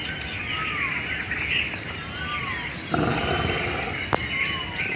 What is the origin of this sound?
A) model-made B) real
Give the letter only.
B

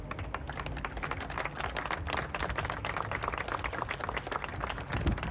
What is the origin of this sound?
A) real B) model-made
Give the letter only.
A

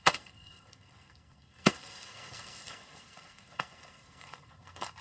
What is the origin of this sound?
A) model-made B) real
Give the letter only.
A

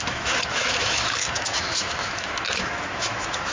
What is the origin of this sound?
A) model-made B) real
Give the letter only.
A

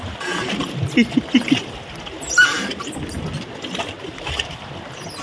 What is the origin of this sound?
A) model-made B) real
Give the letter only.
B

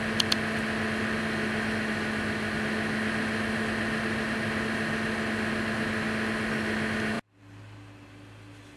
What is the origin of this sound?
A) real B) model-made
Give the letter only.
A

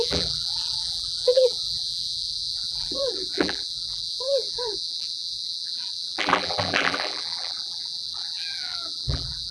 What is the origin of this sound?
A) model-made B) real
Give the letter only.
A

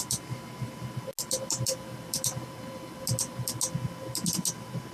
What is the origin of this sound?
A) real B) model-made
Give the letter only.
A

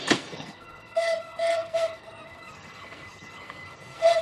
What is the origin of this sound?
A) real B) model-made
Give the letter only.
B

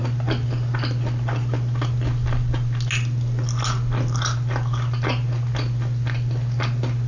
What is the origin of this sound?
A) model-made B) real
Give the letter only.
B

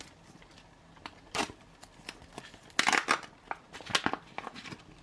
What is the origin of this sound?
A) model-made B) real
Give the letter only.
B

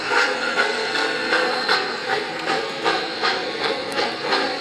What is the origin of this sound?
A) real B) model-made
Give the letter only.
B